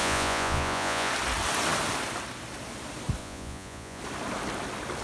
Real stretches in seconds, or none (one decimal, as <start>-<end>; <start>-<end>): 1.1-3.2; 4.0-5.0